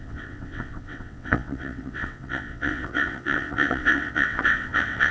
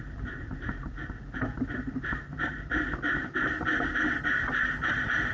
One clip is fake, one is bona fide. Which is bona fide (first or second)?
second